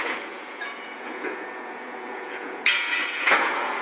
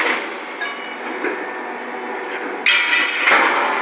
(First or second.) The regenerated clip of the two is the first